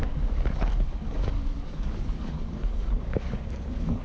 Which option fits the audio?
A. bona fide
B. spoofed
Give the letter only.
B